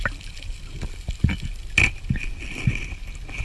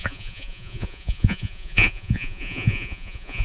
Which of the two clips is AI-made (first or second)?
second